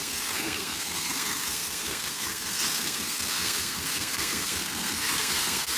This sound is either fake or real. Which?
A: fake